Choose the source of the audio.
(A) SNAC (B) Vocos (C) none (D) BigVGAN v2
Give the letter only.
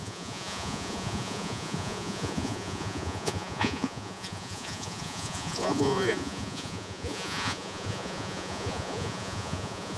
B